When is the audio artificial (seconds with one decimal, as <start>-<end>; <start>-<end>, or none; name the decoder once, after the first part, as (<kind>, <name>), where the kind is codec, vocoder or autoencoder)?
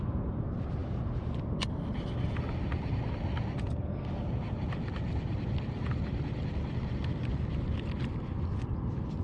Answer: none